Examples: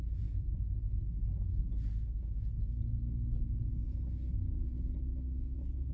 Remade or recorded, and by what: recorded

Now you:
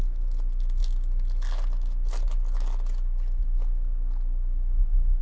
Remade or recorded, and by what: recorded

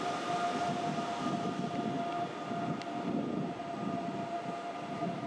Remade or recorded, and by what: recorded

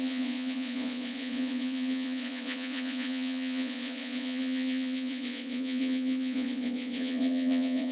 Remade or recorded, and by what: remade, vocoder, Vocos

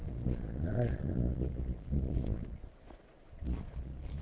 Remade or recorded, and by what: remade, vocoder, Vocos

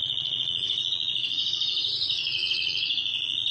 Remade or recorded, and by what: remade, vocoder, Vocos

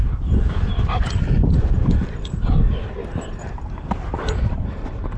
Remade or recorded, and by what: recorded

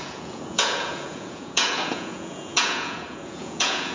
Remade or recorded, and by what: remade, vocoder, Vocos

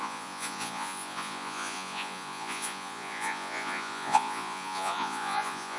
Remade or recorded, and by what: remade, vocoder, Vocos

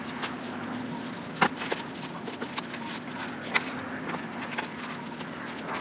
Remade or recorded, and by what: recorded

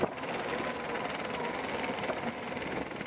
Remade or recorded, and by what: recorded